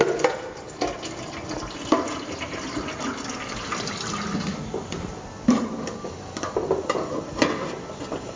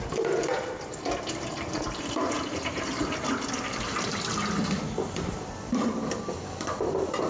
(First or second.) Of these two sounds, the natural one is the first